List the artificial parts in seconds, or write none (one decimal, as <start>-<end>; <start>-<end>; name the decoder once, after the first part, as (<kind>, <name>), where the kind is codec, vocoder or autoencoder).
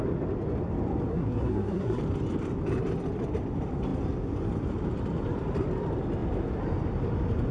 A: 1.1-2.0 (codec, SNAC)